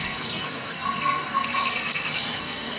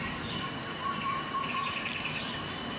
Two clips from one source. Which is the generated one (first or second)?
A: first